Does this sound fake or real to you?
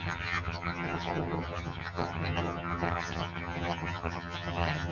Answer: fake